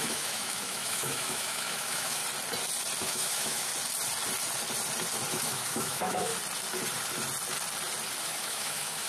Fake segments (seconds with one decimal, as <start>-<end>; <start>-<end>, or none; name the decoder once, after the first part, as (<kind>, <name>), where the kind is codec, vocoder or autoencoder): 0.0-2.2 (autoencoder, DAC-VAE); 3.0-3.7; 5.3-6.3; 8.2-9.1